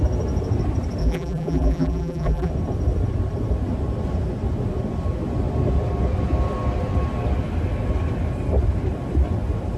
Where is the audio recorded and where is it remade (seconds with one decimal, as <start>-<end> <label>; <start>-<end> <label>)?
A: 0.0-1.0 recorded; 1.0-2.5 remade; 2.5-9.8 recorded

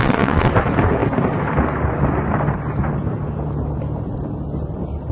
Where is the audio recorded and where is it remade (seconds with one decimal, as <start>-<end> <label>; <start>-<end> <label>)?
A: 0.0-0.5 remade; 0.5-5.1 recorded

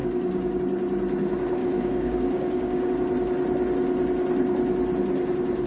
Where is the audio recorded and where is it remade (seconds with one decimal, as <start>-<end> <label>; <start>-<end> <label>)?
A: 0.0-0.6 remade; 0.6-1.6 recorded; 1.6-2.9 remade; 2.9-5.7 recorded

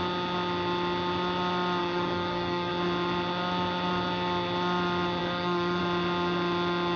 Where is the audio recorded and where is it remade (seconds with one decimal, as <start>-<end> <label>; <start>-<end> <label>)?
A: 0.0-1.8 recorded; 1.8-2.7 remade; 2.7-5.2 recorded; 5.2-5.8 remade; 5.8-7.0 recorded

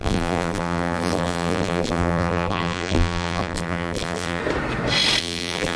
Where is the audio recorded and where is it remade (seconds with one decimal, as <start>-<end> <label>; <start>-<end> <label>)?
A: 0.0-4.4 remade; 4.4-5.2 recorded; 5.2-5.8 remade